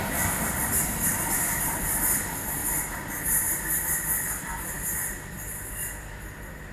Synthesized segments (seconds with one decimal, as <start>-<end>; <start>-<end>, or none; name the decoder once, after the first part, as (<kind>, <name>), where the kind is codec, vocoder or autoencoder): none